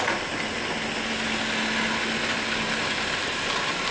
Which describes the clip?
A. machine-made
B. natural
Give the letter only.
B